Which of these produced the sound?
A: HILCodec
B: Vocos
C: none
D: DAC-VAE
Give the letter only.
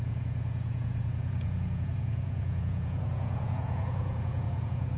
B